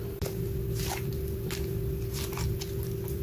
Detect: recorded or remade recorded